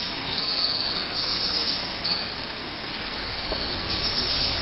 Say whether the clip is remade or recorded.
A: remade